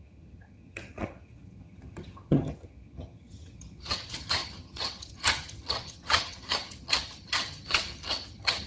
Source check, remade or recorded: remade